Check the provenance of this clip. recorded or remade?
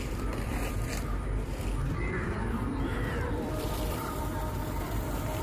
remade